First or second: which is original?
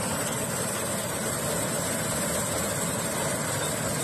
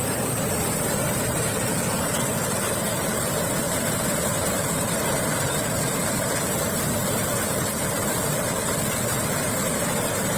first